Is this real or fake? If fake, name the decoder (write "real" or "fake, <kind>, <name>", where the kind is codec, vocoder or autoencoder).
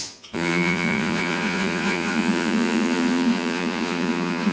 fake, vocoder, Vocos